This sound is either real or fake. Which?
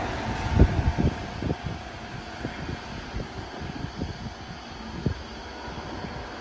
real